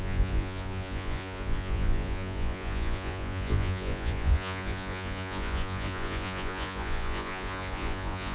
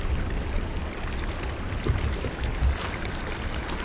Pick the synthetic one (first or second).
first